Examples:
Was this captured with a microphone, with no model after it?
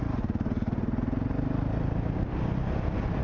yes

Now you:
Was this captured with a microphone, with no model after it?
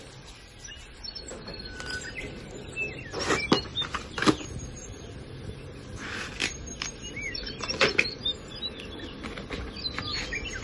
yes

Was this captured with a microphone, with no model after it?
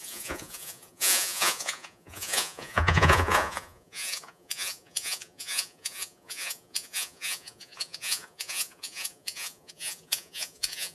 no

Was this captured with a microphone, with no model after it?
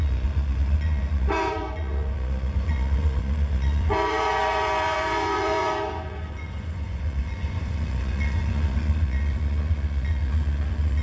no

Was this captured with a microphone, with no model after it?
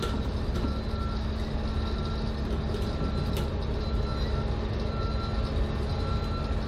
yes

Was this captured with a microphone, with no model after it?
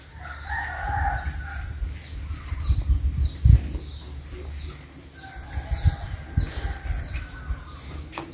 yes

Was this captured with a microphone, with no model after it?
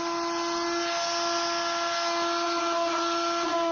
yes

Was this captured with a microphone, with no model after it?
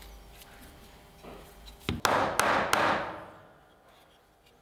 yes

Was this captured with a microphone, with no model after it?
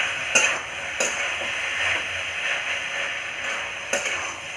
yes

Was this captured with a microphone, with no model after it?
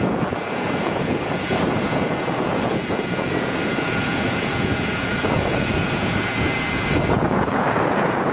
no